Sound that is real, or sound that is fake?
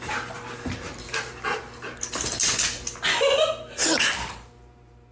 real